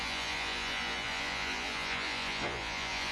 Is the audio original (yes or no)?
no